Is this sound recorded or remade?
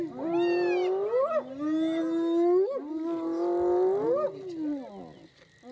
recorded